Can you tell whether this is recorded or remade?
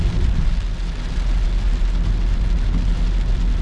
recorded